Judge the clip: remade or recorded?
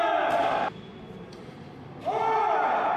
recorded